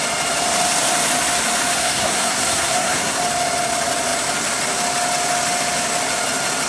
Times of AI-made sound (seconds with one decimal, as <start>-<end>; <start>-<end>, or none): 1.8-3.2